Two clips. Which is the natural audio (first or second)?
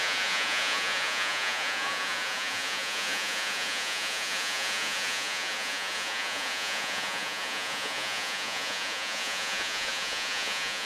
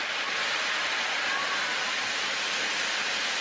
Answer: second